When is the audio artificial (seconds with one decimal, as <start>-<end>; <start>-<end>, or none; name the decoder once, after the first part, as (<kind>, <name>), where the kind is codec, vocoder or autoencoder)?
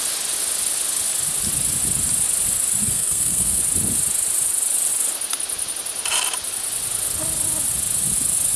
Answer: 2.8-3.6 (codec, SNAC)